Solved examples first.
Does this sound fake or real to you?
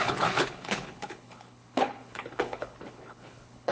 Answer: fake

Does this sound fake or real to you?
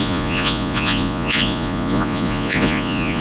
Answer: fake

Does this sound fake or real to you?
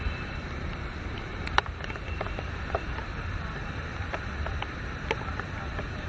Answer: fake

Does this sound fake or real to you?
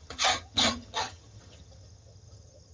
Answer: fake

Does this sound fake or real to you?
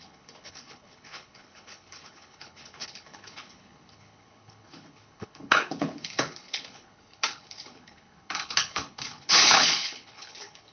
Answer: fake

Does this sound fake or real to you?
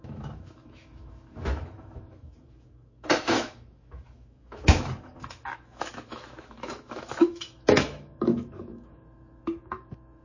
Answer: fake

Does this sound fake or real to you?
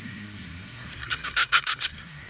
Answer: fake